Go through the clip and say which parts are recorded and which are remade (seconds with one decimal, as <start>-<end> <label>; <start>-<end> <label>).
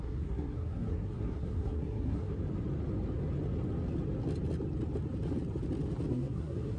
0.0-2.4 remade; 2.4-6.1 recorded; 6.1-6.8 remade